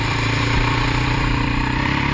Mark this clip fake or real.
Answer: fake